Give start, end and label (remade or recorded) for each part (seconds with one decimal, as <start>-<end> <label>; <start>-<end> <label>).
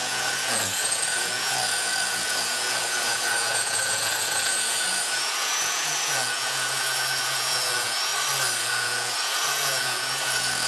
0.0-8.1 remade; 8.1-8.6 recorded; 8.6-10.7 remade